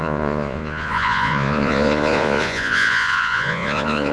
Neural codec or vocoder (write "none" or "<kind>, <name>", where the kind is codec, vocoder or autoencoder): vocoder, Vocos